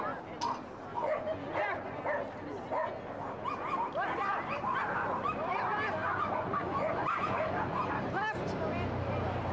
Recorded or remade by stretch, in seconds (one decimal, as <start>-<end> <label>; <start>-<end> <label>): 0.0-0.9 recorded; 0.9-2.0 remade; 2.0-6.0 recorded; 6.0-7.9 remade; 7.9-9.5 recorded